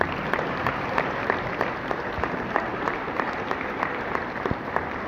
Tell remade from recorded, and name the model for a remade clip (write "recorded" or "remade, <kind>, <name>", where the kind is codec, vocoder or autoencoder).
remade, vocoder, BigVGAN v2